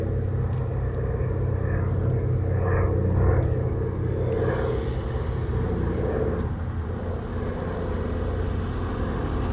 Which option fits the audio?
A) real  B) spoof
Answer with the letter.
A